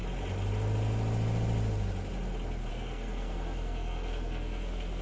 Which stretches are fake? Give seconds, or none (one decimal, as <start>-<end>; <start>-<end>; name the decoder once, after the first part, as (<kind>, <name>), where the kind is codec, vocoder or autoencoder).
2.7-5.0 (codec, SNAC)